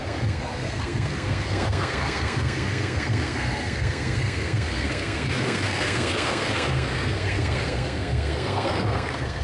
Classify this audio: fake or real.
fake